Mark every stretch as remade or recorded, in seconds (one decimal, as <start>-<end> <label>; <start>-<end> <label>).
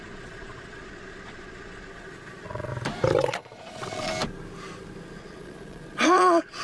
0.0-2.7 remade; 2.7-3.2 recorded; 3.2-4.1 remade; 4.1-5.2 recorded; 5.2-6.6 remade